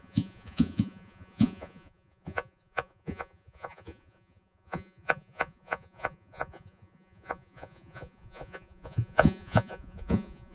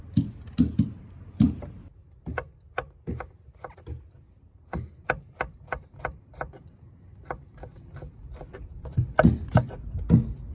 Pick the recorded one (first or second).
second